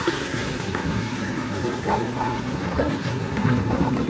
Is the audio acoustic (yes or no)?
no